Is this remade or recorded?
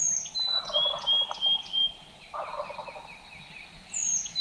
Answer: recorded